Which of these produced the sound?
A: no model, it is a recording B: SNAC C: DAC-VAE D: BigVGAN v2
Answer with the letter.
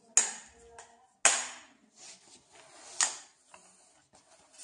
A